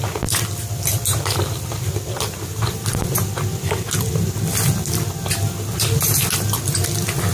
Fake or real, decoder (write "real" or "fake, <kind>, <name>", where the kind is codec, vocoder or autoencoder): real